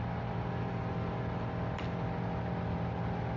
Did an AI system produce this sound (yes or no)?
no